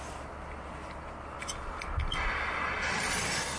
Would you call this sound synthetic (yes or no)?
no